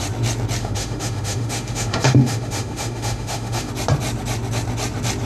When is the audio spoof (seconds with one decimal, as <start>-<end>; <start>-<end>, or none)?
0.6-3.7